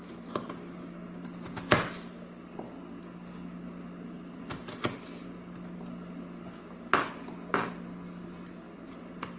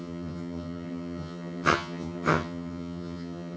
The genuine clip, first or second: first